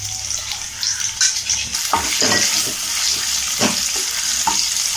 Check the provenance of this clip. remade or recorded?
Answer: recorded